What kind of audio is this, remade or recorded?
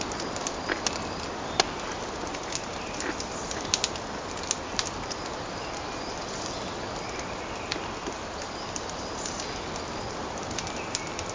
recorded